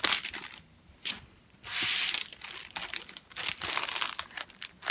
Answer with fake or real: real